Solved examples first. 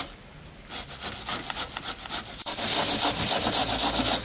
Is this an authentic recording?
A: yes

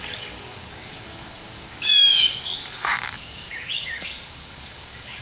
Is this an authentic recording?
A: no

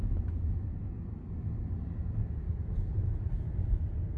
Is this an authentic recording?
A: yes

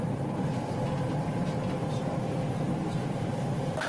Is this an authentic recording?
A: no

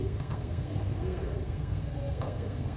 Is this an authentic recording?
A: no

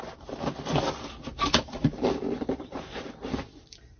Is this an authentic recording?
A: no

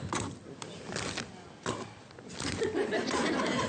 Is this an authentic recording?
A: yes